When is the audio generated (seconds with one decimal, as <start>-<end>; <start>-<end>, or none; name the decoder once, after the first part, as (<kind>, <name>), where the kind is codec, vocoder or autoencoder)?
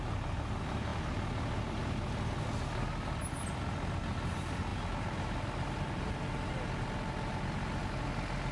none